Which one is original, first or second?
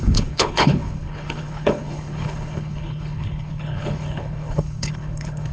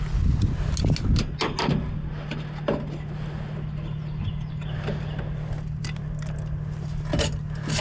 second